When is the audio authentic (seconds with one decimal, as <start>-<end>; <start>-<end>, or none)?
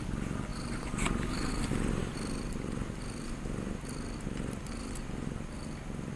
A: 0.0-0.5; 1.5-6.2